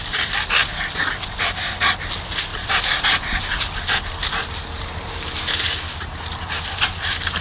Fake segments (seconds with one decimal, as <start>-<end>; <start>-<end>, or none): 4.6-6.1